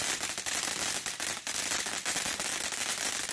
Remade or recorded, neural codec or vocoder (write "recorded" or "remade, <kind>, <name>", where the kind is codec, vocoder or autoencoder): recorded